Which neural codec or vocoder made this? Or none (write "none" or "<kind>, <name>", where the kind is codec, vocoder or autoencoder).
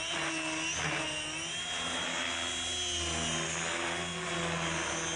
none